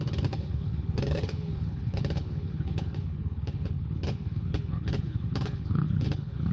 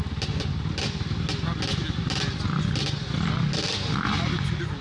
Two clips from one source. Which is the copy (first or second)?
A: first